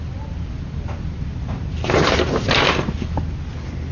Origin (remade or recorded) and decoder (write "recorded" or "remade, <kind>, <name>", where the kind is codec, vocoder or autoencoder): recorded